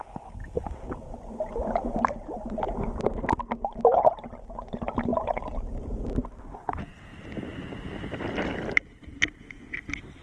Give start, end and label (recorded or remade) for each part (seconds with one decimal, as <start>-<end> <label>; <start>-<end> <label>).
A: 0.0-0.4 recorded; 0.4-2.8 remade; 2.8-5.1 recorded; 5.1-6.5 remade; 6.5-10.2 recorded